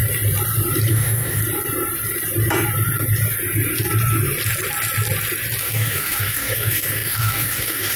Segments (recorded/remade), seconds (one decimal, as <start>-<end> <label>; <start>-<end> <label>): 0.0-0.9 recorded; 0.9-1.4 remade; 1.4-5.6 recorded; 5.6-8.0 remade